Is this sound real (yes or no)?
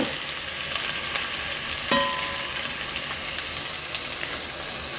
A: yes